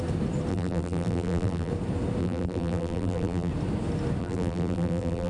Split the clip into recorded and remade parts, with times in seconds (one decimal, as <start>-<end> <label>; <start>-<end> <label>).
0.0-0.5 recorded; 0.5-1.7 remade; 1.7-2.2 recorded; 2.2-3.5 remade; 3.5-4.2 recorded; 4.2-5.3 remade